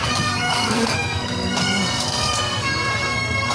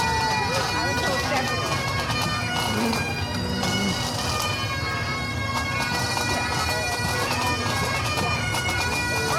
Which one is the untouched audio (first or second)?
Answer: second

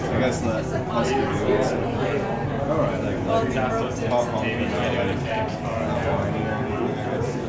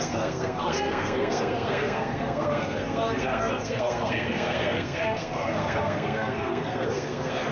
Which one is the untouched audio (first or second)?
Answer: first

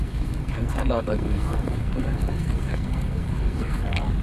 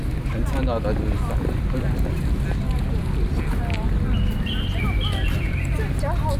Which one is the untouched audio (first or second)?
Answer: second